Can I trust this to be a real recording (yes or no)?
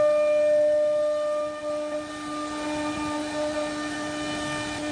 yes